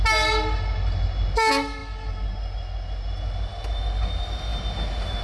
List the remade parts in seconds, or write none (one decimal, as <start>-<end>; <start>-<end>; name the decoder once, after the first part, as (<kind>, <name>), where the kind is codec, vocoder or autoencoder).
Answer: none